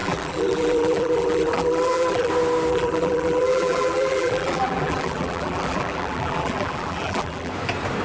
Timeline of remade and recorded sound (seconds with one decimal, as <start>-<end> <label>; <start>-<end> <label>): 0.0-2.3 remade; 2.3-2.7 recorded; 2.7-7.5 remade; 7.5-8.0 recorded